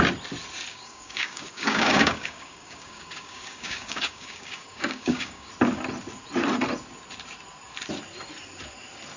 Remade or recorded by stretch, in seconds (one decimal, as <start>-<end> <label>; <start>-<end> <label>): 0.0-0.7 recorded; 0.7-5.5 remade; 5.5-9.2 recorded